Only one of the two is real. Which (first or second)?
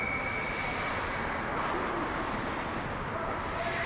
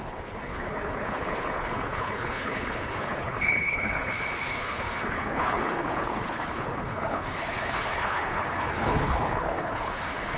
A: first